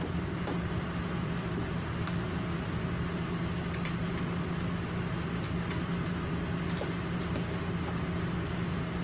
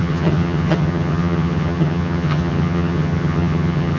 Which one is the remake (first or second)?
second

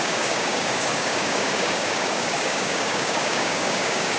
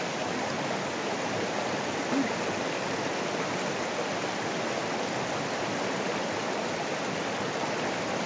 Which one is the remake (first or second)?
first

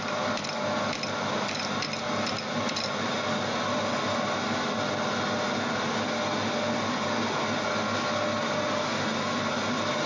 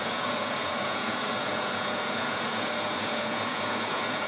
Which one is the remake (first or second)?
second